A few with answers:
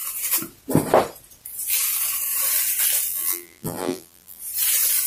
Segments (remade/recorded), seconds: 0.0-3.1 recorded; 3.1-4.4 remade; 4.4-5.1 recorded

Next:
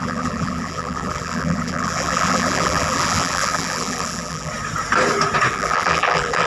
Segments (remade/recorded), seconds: 0.0-4.5 remade; 4.5-5.5 recorded; 5.5-6.5 remade

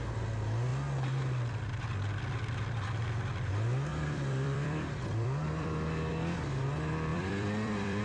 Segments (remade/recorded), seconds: 0.0-3.9 recorded; 3.9-6.1 remade; 6.1-7.1 recorded; 7.1-8.0 remade

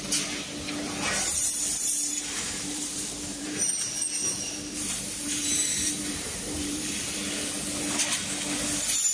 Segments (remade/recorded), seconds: 0.0-2.1 recorded; 2.1-7.2 remade; 7.2-9.1 recorded